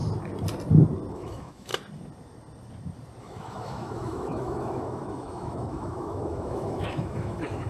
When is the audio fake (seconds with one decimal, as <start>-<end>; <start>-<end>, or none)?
1.1-1.7; 3.2-7.7